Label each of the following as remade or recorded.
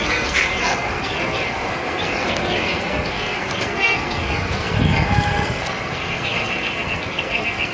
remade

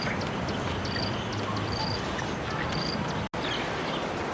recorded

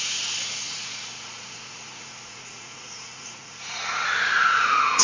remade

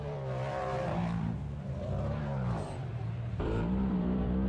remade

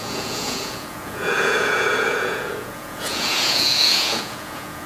remade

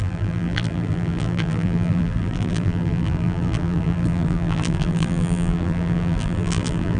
remade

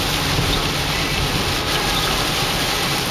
recorded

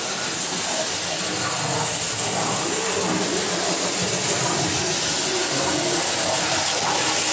recorded